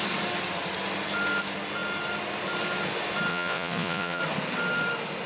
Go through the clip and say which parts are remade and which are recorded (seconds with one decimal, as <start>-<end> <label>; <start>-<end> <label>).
0.0-3.3 recorded; 3.3-4.2 remade; 4.2-5.3 recorded